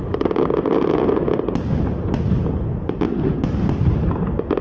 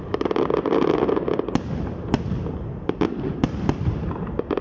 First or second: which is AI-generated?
second